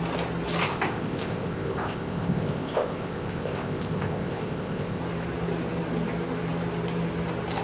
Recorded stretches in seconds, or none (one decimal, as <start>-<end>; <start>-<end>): 0.0-0.6; 5.0-7.6